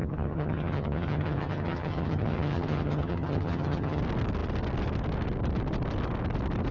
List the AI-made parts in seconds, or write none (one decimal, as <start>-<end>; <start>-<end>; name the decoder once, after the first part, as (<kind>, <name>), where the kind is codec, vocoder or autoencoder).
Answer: 0.0-4.0 (vocoder, HiFi-GAN)